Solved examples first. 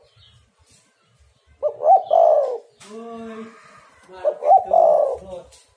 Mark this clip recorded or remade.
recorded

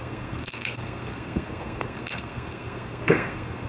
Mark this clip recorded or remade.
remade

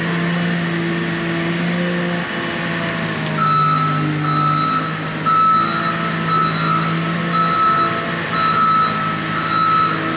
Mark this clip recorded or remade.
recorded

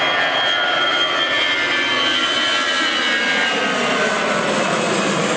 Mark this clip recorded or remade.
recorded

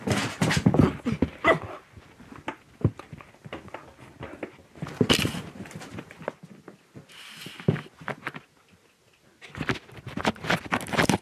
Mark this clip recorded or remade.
recorded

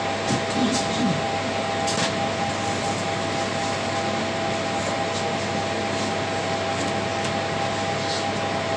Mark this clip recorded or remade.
recorded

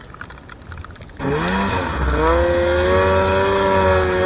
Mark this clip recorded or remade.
recorded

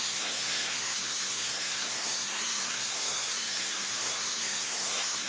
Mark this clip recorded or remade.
remade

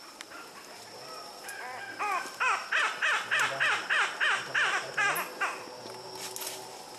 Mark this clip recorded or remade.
recorded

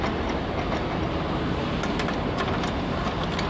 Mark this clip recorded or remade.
recorded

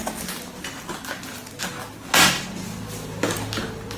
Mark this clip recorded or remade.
recorded